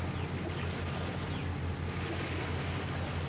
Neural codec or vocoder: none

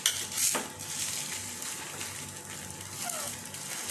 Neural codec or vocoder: none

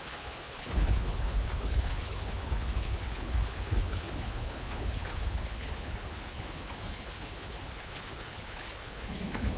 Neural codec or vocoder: codec, HILCodec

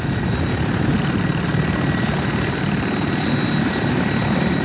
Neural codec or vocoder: none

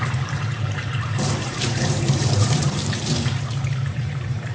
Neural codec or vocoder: vocoder, BigVGAN v2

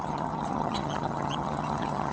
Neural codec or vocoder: vocoder, HiFi-GAN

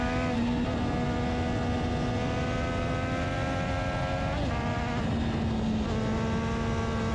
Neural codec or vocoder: none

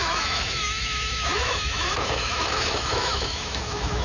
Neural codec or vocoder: autoencoder, DAC-VAE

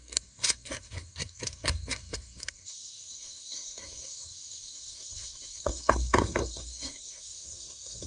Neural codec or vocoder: codec, SNAC